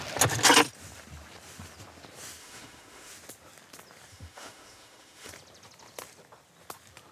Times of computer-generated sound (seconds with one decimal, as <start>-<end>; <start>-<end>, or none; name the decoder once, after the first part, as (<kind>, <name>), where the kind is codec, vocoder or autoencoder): 2.4-3.1 (autoencoder, DAC-VAE); 4.1-5.3